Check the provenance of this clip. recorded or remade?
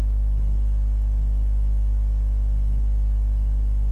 recorded